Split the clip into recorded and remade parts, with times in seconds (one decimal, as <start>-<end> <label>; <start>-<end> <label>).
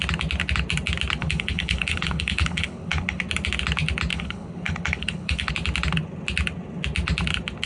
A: 0.0-1.2 recorded; 1.2-3.2 remade; 3.2-4.1 recorded; 4.1-5.5 remade; 5.5-7.7 recorded